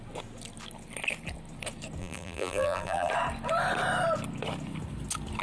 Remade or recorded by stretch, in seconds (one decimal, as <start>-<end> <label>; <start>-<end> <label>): 0.0-2.0 recorded; 2.0-3.1 remade; 3.1-5.4 recorded